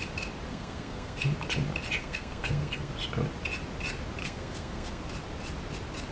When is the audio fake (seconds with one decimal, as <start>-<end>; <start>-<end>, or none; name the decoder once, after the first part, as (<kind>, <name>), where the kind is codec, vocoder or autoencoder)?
0.5-1.2 (codec, SNAC); 2.0-2.9; 4.2-5.0